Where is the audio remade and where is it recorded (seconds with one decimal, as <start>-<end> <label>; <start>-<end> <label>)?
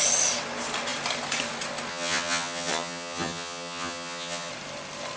0.0-1.9 recorded; 1.9-4.5 remade; 4.5-5.2 recorded